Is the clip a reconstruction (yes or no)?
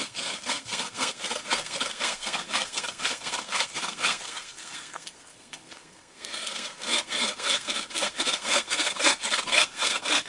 yes